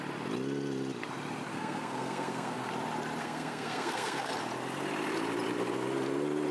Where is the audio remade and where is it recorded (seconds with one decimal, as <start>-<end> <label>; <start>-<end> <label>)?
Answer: 0.0-1.5 recorded; 1.5-2.7 remade; 2.7-3.2 recorded; 3.2-4.3 remade; 4.3-6.5 recorded